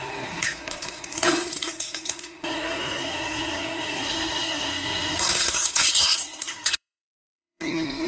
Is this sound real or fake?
fake